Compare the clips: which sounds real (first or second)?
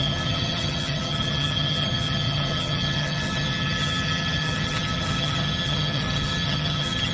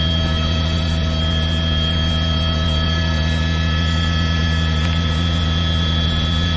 second